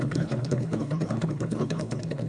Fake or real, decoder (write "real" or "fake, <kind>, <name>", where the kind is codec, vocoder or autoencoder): fake, codec, HILCodec